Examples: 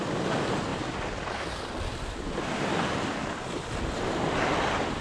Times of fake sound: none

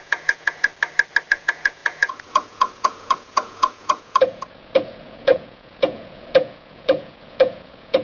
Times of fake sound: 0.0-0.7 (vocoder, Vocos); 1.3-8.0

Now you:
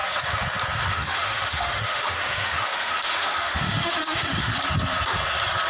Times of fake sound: 0.8-4.5 (autoencoder, DAC-VAE)